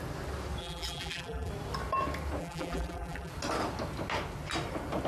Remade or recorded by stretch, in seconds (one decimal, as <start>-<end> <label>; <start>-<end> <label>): 0.0-0.6 recorded; 0.6-1.5 remade; 1.5-2.4 recorded; 2.4-3.3 remade; 3.3-5.1 recorded